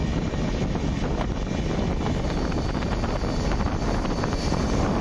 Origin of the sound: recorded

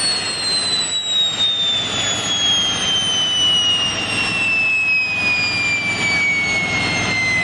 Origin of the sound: recorded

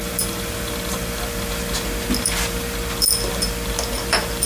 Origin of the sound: recorded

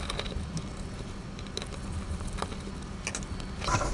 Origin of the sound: recorded